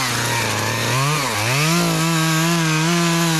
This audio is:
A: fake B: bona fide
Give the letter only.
B